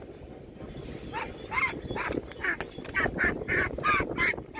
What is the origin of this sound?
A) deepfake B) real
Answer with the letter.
B